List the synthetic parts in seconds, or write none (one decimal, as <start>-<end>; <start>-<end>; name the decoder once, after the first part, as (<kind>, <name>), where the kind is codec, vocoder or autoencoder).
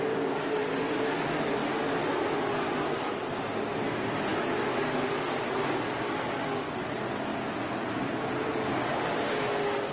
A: 1.6-2.4 (vocoder, BigVGAN v2)